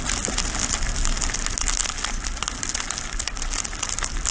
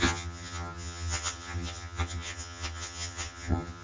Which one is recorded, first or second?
first